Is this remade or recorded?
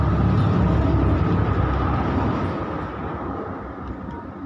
recorded